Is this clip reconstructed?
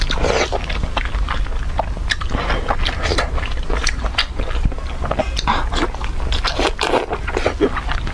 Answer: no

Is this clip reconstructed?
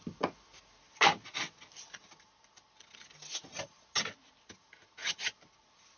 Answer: no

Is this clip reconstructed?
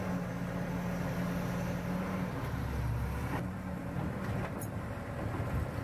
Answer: no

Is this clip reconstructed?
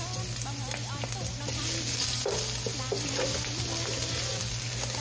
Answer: no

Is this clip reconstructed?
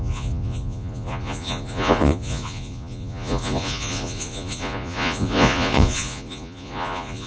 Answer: yes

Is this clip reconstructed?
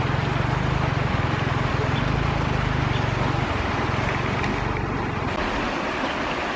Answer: no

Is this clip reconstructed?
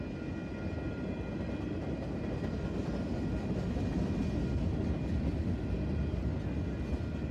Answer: no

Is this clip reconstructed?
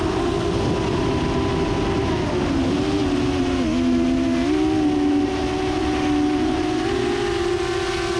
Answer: no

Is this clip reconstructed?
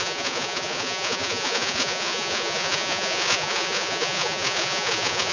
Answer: yes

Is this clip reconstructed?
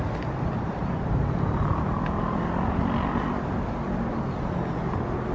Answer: no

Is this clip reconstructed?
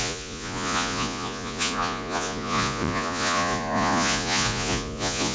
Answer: yes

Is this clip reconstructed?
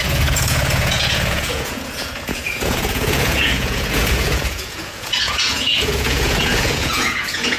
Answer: yes